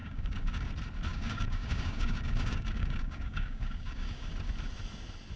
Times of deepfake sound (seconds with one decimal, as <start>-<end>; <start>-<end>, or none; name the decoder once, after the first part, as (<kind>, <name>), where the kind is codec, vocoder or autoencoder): 0.0-0.7 (codec, DAC); 1.1-4.3